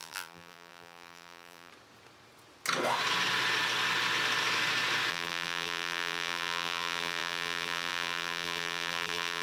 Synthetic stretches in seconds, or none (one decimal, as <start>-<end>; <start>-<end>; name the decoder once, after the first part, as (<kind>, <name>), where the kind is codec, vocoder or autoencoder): 0.0-1.7 (vocoder, BigVGAN v2); 5.1-9.4